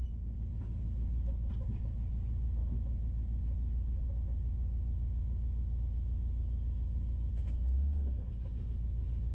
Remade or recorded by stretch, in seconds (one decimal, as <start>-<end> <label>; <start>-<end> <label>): 0.0-7.3 recorded; 7.3-8.3 remade; 8.3-9.3 recorded

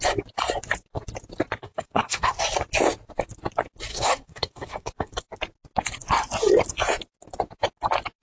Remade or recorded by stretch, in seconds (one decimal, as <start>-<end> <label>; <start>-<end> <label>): 0.0-1.6 recorded; 1.6-2.4 remade; 2.4-3.9 recorded; 3.9-5.1 remade; 5.1-8.2 recorded